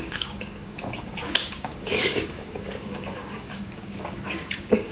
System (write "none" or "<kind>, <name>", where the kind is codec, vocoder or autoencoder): codec, DAC